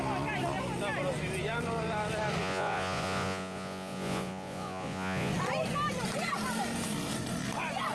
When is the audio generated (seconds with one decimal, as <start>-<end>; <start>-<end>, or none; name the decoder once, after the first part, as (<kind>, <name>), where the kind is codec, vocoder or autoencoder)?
2.4-5.3 (vocoder, Vocos)